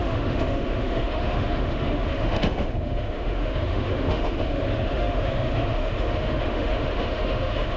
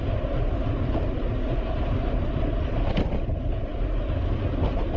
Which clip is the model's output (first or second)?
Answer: first